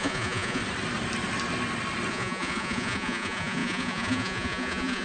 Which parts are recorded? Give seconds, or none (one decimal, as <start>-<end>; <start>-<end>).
0.6-2.1